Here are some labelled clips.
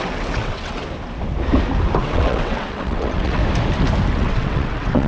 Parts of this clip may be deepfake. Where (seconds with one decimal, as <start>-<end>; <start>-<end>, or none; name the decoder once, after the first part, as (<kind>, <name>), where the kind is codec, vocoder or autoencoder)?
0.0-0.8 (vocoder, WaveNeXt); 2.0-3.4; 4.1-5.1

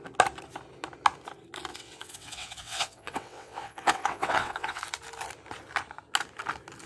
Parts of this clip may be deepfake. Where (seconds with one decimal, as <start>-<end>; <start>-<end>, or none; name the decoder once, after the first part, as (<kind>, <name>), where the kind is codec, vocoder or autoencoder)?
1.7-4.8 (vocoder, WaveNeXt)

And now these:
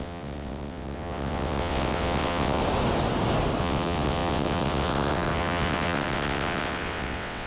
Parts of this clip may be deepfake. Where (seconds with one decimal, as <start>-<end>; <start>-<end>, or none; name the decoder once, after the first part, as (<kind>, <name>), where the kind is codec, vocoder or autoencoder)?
0.0-2.6 (vocoder, WaveNeXt); 3.6-7.5

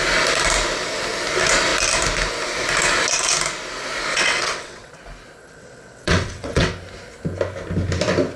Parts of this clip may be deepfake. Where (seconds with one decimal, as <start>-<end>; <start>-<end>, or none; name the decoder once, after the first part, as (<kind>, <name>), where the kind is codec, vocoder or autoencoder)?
4.1-4.9 (vocoder, WaveNeXt); 5.4-6.7

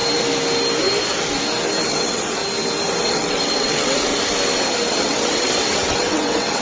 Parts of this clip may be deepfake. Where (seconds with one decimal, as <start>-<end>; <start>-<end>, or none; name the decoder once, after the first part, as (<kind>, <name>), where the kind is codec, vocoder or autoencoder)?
1.9-2.4 (vocoder, WaveNeXt); 3.0-4.1; 4.9-6.6

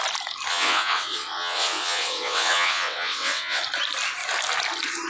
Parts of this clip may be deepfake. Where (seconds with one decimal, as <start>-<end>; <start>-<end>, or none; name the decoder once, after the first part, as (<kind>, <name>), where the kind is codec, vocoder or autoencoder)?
0.5-3.6 (vocoder, WaveNeXt)